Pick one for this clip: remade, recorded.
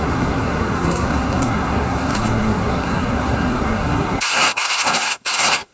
remade